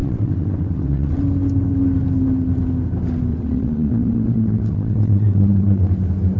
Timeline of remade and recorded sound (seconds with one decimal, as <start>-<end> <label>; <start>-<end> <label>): 0.0-1.2 remade; 1.2-3.3 recorded; 3.3-5.9 remade; 5.9-6.4 recorded